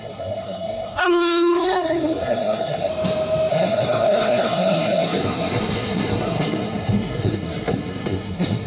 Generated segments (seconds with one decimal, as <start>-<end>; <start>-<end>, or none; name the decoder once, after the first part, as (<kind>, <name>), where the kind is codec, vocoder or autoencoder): 0.0-2.9 (codec, SNAC); 3.5-8.7